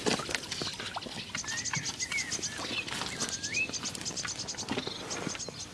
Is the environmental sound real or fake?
real